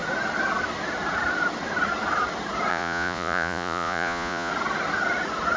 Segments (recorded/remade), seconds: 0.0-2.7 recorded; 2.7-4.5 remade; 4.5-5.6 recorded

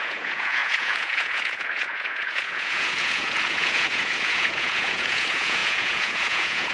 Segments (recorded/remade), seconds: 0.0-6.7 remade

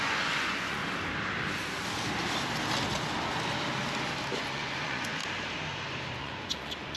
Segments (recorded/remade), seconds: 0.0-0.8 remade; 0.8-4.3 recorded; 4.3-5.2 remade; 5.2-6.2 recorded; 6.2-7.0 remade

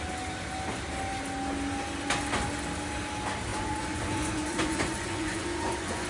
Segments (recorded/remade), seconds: 0.0-3.5 recorded; 3.5-6.1 remade

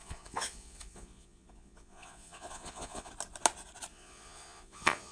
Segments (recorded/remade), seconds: 0.0-3.1 remade; 3.1-3.9 recorded; 3.9-5.1 remade